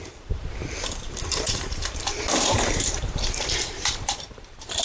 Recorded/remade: remade